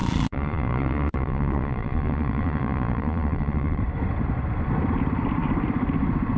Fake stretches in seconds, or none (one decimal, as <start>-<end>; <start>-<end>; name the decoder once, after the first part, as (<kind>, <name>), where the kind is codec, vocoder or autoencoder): 0.0-3.8 (vocoder, Vocos)